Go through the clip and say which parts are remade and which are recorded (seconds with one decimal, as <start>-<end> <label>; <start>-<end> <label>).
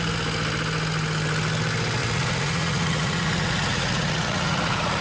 0.0-2.0 recorded; 2.0-5.0 remade